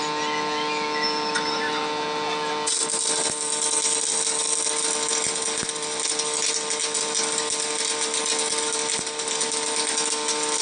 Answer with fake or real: real